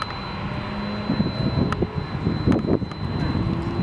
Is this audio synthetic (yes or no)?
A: no